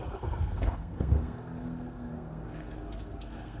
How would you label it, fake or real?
fake